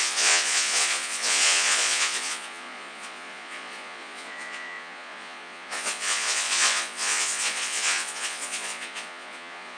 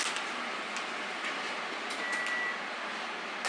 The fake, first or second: first